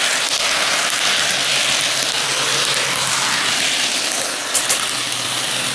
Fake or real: real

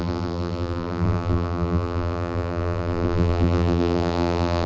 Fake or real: fake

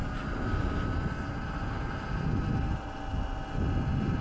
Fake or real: real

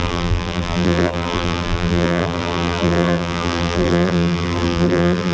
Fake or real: fake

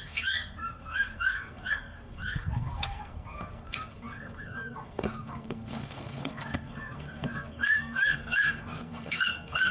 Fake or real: fake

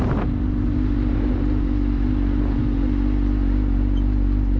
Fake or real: real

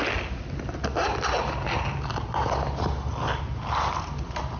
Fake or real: real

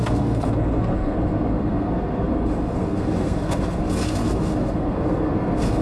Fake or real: fake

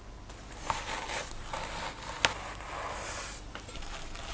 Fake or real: real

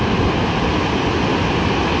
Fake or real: real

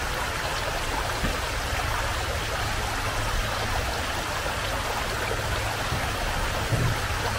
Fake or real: real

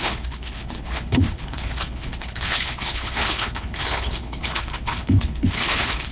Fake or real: fake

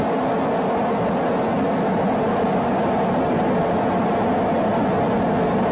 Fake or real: real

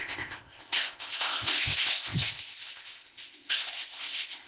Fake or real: fake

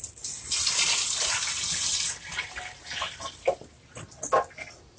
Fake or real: real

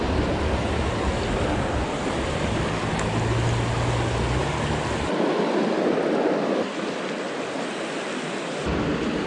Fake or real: real